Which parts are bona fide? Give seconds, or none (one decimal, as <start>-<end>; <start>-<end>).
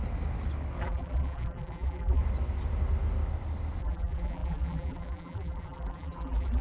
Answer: 0.0-0.8; 2.2-3.8